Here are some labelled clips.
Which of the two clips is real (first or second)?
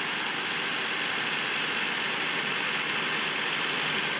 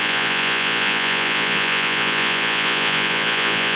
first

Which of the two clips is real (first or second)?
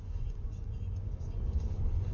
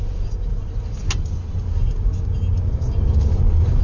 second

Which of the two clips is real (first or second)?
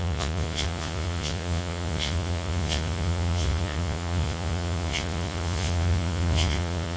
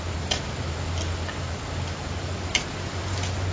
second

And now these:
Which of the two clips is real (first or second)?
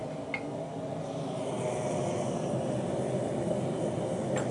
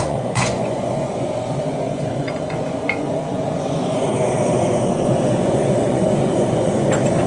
first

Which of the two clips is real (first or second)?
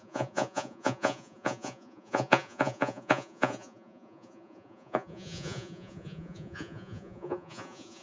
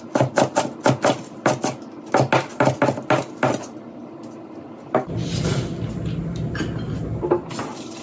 second